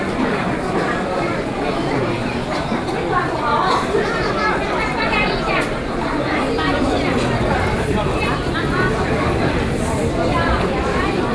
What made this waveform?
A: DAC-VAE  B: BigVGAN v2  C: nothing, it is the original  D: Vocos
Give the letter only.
B